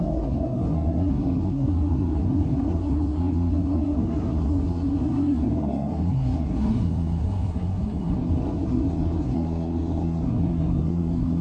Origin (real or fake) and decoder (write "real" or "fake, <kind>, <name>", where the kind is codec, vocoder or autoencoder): fake, codec, SNAC